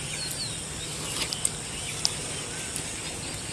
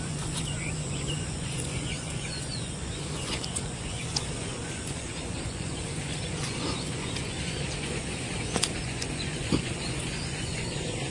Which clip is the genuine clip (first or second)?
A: first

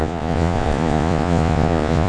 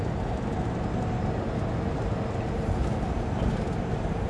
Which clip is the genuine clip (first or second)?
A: second